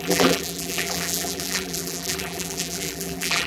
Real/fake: fake